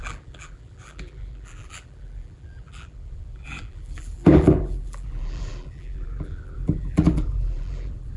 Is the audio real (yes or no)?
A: no